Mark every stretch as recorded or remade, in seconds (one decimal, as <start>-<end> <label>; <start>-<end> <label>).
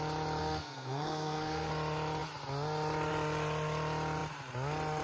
0.0-0.4 recorded; 0.4-1.7 remade; 1.7-5.0 recorded